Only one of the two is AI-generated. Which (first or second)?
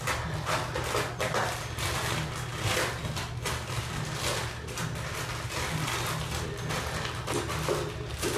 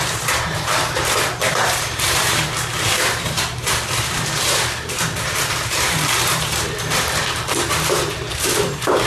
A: second